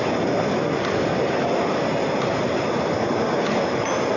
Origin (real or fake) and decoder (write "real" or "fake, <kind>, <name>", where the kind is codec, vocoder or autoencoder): real